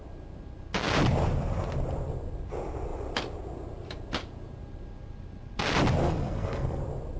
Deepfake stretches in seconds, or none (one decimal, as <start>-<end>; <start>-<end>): 6.0-6.8